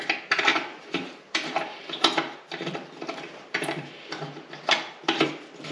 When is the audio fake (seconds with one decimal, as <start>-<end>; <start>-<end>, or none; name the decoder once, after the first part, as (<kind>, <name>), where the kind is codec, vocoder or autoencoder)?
0.5-3.9 (vocoder, BigVGAN v2)